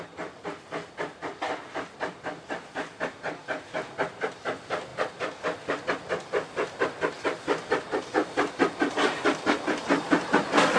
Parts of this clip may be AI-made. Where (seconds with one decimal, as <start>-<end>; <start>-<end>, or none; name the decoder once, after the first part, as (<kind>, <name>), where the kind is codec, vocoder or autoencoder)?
none